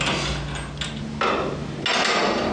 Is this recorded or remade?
recorded